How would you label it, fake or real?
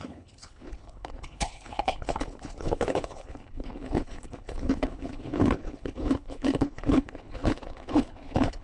fake